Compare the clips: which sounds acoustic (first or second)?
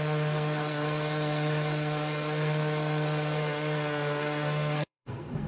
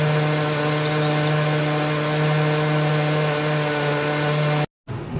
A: second